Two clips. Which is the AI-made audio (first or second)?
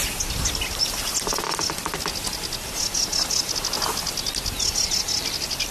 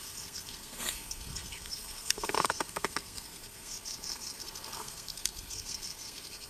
second